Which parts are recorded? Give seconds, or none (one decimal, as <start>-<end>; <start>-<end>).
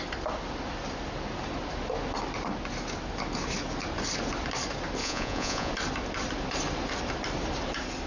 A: 0.0-5.0; 5.7-8.1